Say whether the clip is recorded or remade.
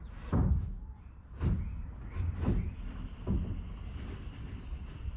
recorded